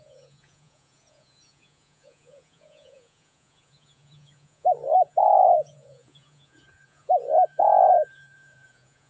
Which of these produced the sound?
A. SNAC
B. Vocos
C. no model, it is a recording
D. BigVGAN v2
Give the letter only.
B